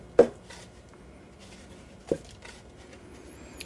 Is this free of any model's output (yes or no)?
yes